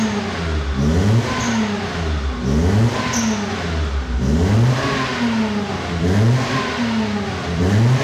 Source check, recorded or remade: recorded